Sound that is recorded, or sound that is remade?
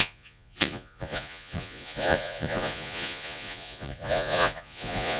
remade